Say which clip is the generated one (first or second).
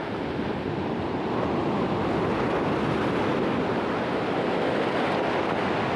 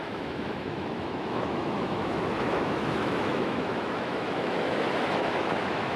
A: second